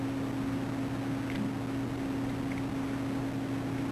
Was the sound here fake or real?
real